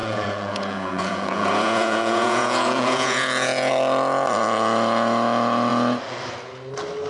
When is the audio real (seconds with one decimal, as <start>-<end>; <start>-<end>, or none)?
3.7-7.1